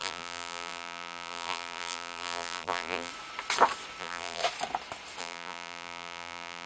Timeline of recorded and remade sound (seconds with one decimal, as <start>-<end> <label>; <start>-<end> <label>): 0.0-3.1 remade; 3.1-4.0 recorded; 4.0-4.4 remade; 4.4-5.2 recorded; 5.2-6.7 remade